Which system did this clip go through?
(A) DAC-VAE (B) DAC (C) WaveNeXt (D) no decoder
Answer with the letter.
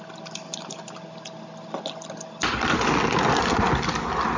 D